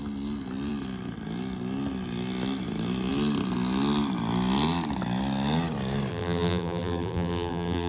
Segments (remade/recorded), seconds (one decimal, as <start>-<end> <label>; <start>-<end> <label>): 0.0-6.1 recorded; 6.1-7.9 remade